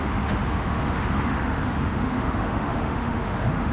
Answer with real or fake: fake